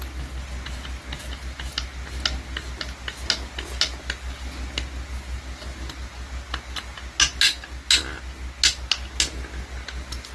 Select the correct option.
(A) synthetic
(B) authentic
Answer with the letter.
B